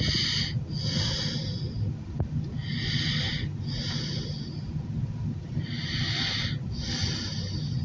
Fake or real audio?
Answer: real